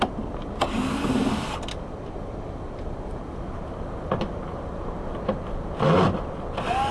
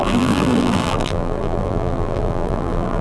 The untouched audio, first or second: first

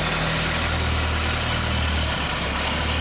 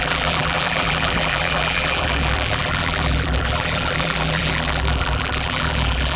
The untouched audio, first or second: first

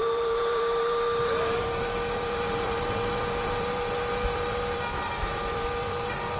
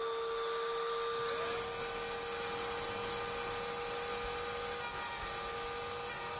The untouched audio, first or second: second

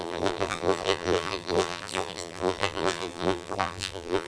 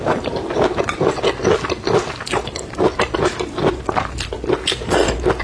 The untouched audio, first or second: second